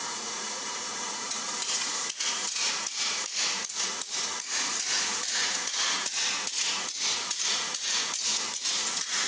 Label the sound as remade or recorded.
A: remade